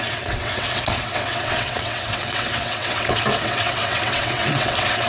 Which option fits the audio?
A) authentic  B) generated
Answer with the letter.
B